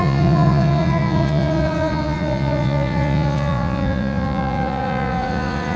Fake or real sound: fake